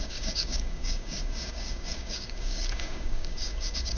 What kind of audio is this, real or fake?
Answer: fake